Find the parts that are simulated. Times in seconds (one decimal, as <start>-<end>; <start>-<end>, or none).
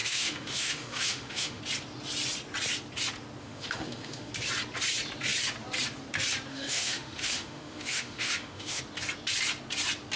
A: 0.0-1.6; 3.4-4.3; 6.5-8.8